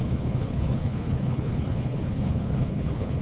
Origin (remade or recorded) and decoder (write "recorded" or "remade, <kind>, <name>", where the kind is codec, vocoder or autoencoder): remade, codec, HILCodec